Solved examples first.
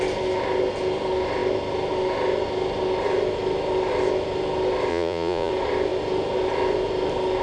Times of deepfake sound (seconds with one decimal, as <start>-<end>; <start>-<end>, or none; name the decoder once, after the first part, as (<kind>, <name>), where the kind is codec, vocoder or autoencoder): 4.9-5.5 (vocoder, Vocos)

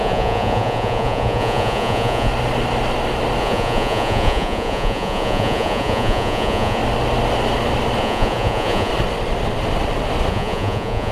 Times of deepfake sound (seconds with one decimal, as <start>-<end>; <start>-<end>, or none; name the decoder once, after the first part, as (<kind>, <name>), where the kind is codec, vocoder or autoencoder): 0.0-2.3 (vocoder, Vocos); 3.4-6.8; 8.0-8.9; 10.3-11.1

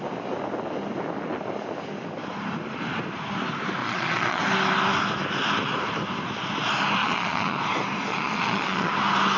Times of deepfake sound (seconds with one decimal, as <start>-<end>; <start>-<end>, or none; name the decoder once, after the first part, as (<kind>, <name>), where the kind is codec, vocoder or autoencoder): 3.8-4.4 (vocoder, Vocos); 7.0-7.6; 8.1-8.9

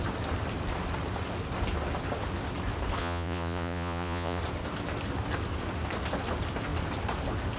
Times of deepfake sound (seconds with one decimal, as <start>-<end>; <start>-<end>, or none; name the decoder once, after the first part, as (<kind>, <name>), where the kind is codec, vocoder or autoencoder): 3.0-4.4 (vocoder, Vocos)

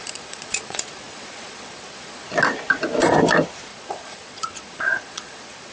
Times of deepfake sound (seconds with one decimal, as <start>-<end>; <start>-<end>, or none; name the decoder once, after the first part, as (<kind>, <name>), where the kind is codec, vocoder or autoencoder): 0.0-2.3 (vocoder, Vocos); 3.7-5.7

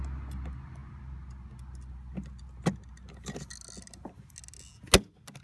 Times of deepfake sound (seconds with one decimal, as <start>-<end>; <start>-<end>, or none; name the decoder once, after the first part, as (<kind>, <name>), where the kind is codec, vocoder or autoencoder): none

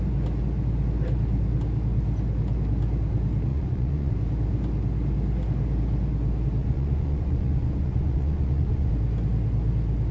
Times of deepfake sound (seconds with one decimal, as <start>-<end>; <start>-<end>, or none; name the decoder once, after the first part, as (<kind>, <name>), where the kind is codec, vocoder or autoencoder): 3.5-4.1 (vocoder, Vocos); 6.6-8.9

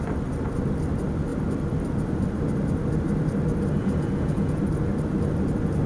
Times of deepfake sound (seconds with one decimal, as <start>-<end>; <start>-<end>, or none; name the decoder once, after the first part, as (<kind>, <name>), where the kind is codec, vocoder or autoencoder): 3.8-4.6 (vocoder, Vocos)